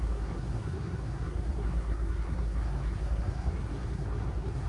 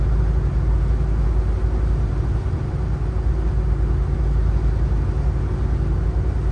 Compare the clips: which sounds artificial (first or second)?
first